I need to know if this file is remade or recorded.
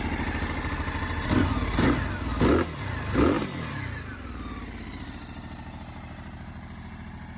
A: recorded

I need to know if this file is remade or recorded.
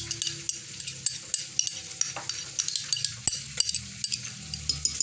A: recorded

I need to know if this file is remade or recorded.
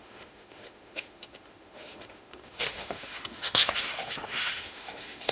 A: remade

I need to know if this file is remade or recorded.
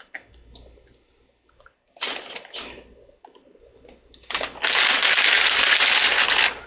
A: recorded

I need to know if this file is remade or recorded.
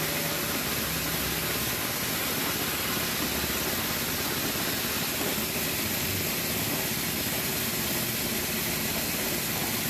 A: recorded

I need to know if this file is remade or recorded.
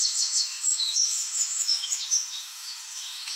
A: remade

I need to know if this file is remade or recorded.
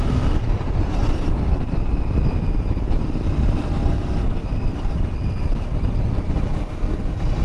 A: recorded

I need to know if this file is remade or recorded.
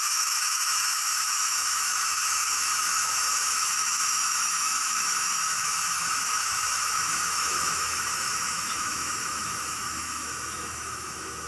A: remade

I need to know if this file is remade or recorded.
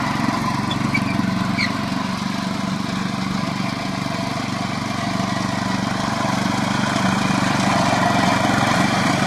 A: recorded